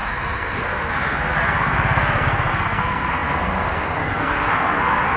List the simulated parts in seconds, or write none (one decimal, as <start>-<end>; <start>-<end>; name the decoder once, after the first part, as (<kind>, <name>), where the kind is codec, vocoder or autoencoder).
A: 0.0-5.2 (codec, SNAC)